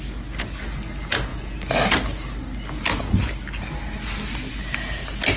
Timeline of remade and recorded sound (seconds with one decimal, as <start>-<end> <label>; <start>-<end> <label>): 0.0-5.4 recorded